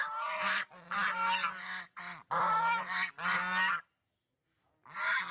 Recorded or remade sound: recorded